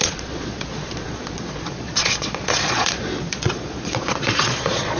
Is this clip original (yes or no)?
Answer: no